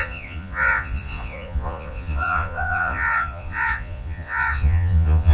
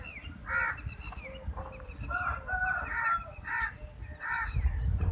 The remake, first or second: first